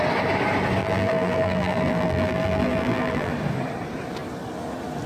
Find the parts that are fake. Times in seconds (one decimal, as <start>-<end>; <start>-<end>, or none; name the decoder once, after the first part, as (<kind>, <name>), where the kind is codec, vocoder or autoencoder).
0.8-3.3 (vocoder, BigVGAN v2)